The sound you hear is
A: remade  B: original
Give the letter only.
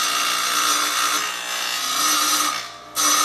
B